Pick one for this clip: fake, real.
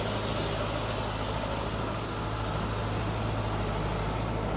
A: real